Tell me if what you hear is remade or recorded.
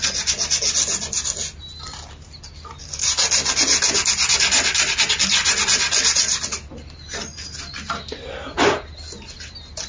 recorded